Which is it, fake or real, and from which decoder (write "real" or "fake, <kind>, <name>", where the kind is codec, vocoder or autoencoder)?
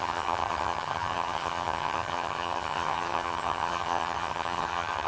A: fake, vocoder, HiFi-GAN